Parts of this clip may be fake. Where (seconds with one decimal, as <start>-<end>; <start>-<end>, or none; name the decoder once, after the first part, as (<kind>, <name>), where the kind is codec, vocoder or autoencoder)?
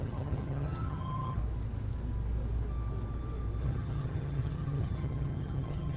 0.0-1.4 (vocoder, HiFi-GAN); 3.6-6.0